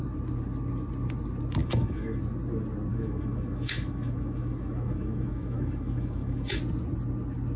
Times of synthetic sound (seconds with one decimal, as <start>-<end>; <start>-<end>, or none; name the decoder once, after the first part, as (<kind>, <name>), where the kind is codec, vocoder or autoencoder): 1.6-2.2 (autoencoder, DAC-VAE); 2.9-6.6